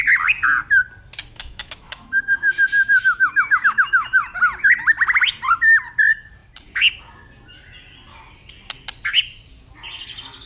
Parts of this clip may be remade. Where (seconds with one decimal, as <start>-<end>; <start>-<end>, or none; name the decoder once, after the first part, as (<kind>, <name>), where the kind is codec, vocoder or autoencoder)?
1.3-4.2 (autoencoder, DAC-VAE)